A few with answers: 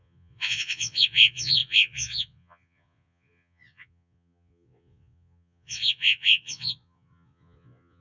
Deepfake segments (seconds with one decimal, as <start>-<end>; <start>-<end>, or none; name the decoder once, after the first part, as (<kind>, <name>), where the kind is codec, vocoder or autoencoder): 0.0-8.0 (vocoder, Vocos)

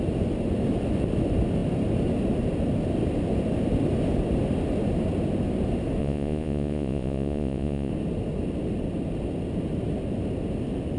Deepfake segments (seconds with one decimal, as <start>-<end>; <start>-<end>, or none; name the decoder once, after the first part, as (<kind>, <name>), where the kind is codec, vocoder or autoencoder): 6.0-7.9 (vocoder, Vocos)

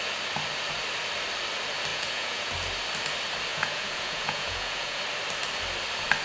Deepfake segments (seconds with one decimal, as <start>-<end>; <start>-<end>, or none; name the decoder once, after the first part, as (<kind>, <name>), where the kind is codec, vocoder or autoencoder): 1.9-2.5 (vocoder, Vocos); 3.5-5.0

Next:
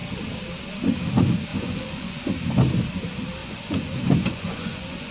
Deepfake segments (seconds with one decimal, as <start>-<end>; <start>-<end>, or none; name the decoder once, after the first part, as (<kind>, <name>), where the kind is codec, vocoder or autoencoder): 1.5-2.3 (vocoder, Vocos); 3.4-5.1

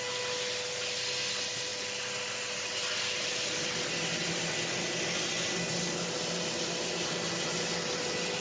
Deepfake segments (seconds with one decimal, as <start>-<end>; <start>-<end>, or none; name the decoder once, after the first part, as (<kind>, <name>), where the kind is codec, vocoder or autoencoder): none